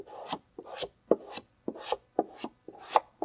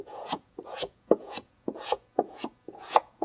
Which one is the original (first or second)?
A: first